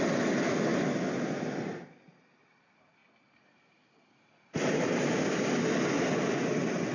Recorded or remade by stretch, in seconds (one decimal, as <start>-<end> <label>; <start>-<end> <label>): 0.0-6.9 recorded